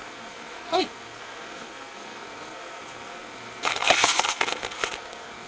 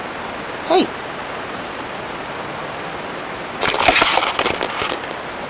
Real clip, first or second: second